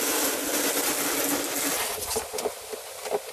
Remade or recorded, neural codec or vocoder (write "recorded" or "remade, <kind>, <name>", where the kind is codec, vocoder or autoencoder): recorded